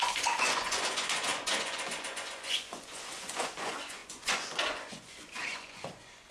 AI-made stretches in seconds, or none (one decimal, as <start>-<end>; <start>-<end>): 0.0-6.3